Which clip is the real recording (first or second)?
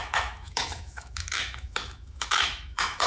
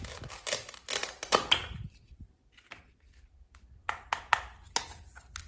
second